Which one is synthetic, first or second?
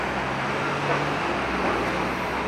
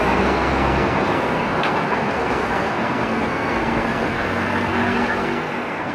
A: second